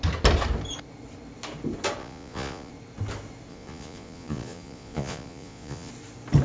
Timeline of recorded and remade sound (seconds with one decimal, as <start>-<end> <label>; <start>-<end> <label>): 0.0-2.0 recorded; 2.0-2.7 remade; 2.7-3.5 recorded; 3.5-5.9 remade; 5.9-6.4 recorded